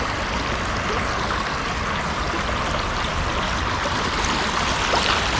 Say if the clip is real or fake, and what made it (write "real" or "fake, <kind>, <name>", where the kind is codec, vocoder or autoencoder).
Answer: real